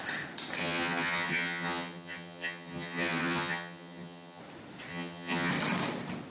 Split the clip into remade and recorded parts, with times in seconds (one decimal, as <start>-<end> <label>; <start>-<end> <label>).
0.0-0.6 recorded; 0.6-4.4 remade; 4.4-4.9 recorded; 4.9-5.5 remade; 5.5-6.3 recorded